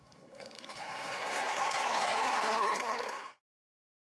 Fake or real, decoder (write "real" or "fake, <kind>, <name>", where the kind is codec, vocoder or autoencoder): fake, codec, SNAC